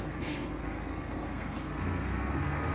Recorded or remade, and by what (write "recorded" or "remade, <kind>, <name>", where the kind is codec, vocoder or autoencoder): remade, codec, SNAC